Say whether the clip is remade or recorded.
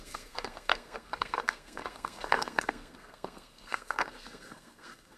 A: remade